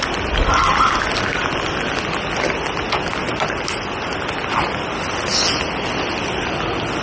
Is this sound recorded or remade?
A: recorded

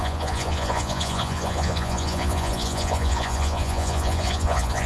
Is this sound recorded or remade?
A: remade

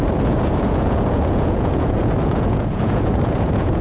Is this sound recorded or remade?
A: remade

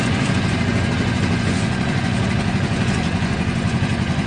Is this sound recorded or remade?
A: remade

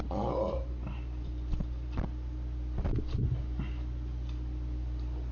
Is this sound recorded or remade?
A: recorded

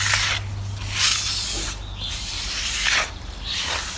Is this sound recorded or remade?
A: recorded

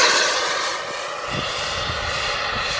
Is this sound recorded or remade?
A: recorded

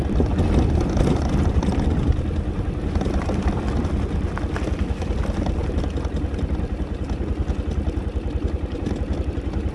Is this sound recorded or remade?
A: recorded